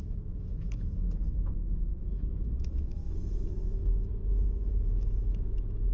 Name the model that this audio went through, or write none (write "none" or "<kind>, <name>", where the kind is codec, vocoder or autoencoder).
autoencoder, DAC-VAE